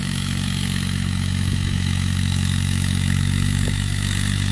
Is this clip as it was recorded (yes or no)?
no